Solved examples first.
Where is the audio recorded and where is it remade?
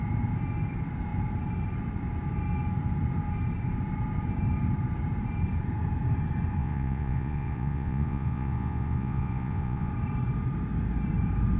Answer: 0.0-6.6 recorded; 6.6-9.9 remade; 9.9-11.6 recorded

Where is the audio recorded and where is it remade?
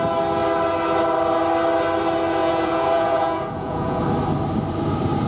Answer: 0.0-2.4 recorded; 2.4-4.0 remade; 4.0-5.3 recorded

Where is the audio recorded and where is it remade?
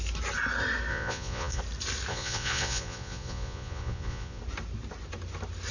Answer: 0.0-0.9 recorded; 0.9-1.6 remade; 1.6-2.1 recorded; 2.1-4.4 remade; 4.4-5.7 recorded